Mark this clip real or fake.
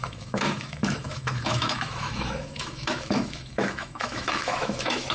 fake